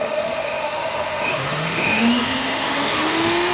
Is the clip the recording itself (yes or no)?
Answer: no